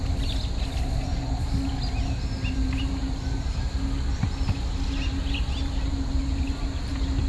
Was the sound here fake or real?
real